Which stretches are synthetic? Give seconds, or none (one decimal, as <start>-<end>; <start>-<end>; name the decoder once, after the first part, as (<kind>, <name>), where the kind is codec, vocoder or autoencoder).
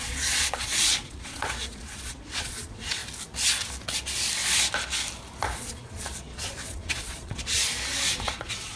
0.0-3.0 (vocoder, Vocos); 5.4-7.6; 8.2-8.8